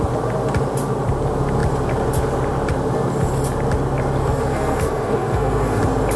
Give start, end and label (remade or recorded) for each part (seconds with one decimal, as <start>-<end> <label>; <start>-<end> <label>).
0.0-4.2 recorded; 4.2-5.8 remade; 5.8-6.2 recorded